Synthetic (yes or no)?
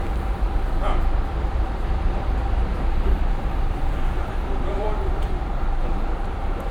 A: yes